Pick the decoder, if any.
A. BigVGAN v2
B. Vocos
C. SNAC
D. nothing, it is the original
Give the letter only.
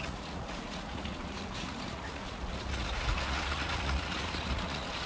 B